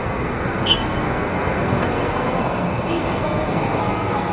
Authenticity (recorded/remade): remade